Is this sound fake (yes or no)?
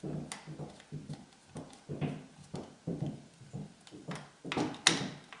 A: no